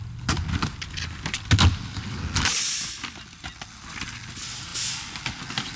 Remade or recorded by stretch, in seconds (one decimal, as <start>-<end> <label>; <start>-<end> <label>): 0.0-5.8 recorded